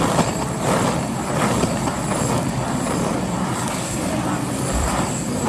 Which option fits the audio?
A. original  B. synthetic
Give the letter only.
B